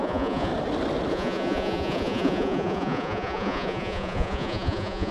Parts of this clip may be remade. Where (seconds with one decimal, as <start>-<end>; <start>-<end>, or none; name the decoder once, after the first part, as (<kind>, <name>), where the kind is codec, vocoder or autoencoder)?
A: 0.0-0.5 (vocoder, Vocos); 1.1-5.1

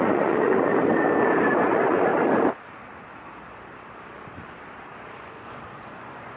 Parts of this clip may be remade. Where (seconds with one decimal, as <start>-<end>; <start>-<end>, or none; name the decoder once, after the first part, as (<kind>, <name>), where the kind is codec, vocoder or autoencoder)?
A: 0.0-0.7 (vocoder, Vocos); 1.6-2.1; 5.1-6.4

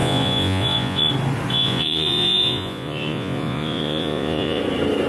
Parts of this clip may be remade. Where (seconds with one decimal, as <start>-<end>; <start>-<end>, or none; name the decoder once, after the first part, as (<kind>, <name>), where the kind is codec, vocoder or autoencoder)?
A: 0.0-1.1 (vocoder, Vocos); 1.5-4.6

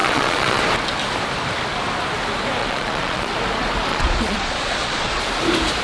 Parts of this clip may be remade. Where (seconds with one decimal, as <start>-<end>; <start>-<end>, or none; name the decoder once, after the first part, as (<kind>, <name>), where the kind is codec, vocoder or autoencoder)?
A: 0.0-0.6 (vocoder, Vocos); 2.6-3.3; 3.9-5.2

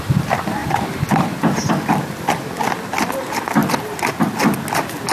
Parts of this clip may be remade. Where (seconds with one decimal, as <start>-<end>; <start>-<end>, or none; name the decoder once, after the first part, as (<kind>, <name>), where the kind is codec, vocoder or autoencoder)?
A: none

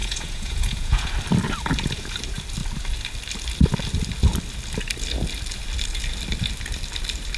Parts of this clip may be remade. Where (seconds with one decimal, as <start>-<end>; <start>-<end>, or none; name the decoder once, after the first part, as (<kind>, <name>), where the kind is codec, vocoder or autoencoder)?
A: 0.0-1.1 (vocoder, Vocos)